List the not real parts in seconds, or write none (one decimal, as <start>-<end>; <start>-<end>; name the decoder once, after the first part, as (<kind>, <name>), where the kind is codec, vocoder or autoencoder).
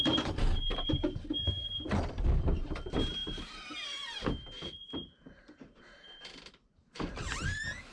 0.0-7.9 (vocoder, BigVGAN v2)